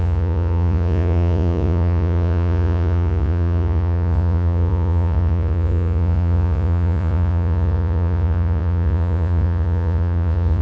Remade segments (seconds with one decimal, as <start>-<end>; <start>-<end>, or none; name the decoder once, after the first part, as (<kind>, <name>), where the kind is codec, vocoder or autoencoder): 0.0-10.6 (vocoder, Vocos)